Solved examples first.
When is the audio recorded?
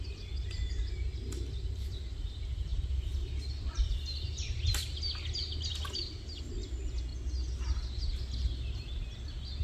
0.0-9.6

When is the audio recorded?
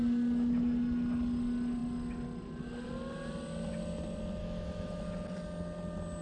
0.0-4.4; 5.0-6.2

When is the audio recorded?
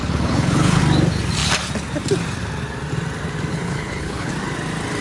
0.8-3.5; 4.3-5.0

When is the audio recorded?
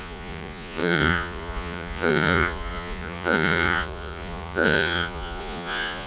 none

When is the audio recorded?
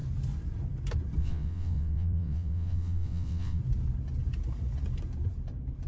0.0-1.2; 3.6-5.9